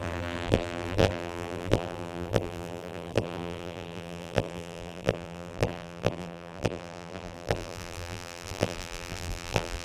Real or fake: fake